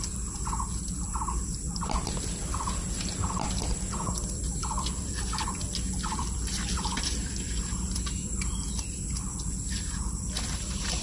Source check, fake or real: fake